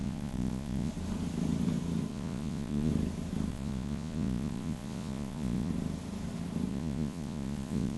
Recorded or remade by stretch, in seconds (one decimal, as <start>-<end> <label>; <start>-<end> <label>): 0.0-0.9 remade; 0.9-2.1 recorded; 2.1-2.9 remade; 2.9-3.5 recorded; 3.5-5.7 remade; 5.7-6.7 recorded; 6.7-8.0 remade